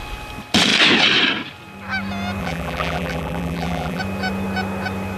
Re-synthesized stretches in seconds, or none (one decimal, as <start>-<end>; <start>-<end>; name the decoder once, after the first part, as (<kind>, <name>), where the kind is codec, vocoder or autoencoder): 2.4-4.0 (vocoder, BigVGAN v2)

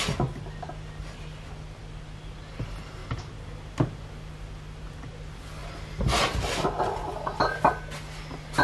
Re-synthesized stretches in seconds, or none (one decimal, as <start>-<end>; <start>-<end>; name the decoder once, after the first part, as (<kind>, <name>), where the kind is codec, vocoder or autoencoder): none

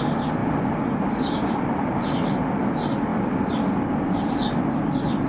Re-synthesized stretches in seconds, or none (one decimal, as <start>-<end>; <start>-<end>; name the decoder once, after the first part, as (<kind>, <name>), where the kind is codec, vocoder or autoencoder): 0.4-1.5 (vocoder, BigVGAN v2); 3.1-4.0